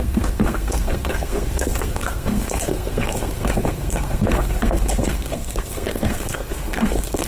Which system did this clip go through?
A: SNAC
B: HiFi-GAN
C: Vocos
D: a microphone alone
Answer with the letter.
A